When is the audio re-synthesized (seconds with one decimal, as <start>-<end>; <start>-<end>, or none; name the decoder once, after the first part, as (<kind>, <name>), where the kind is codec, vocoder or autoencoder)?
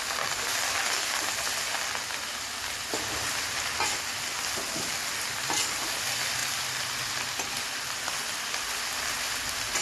none